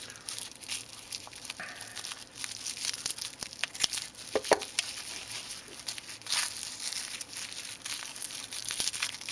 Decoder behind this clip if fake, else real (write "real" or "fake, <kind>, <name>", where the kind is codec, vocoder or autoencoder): real